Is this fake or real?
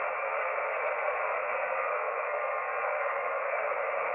fake